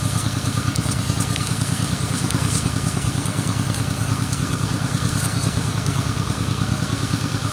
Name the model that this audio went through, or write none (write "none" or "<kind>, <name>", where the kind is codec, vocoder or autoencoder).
codec, SNAC